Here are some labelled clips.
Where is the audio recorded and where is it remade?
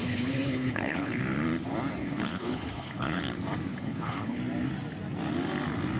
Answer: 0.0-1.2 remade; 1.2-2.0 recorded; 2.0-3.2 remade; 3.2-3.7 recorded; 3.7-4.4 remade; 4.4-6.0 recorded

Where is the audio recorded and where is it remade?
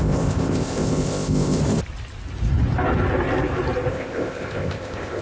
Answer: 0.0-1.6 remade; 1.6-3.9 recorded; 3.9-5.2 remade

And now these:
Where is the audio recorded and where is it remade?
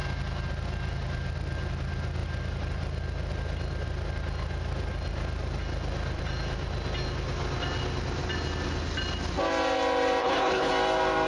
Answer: 0.0-10.2 recorded; 10.2-10.7 remade; 10.7-11.3 recorded